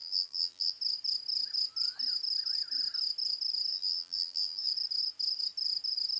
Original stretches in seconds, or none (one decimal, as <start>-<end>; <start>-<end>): 0.7-3.7; 4.7-6.2